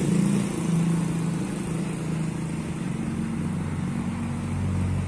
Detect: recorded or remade recorded